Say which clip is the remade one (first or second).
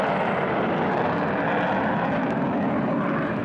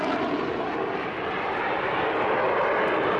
second